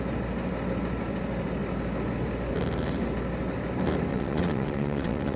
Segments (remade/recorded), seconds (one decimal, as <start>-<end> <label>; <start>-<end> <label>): 0.0-4.1 recorded; 4.1-5.4 remade